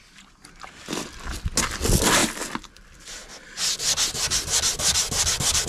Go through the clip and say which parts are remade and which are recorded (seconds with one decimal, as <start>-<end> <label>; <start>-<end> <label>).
0.0-5.7 recorded

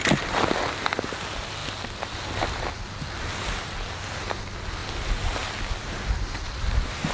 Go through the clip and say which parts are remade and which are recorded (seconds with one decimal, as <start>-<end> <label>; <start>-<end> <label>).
0.0-7.1 recorded

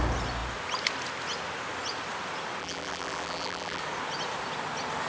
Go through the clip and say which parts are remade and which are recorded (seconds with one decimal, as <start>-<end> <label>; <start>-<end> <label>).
0.0-2.6 recorded; 2.6-3.8 remade; 3.8-5.1 recorded

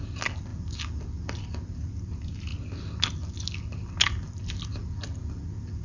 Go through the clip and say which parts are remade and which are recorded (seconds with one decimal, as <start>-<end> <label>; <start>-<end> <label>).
0.0-5.8 recorded

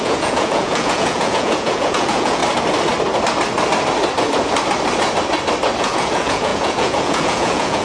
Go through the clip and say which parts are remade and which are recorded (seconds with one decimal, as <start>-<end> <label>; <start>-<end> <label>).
0.0-2.4 remade; 2.4-5.8 recorded; 5.8-7.8 remade